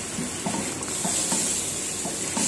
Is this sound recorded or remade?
recorded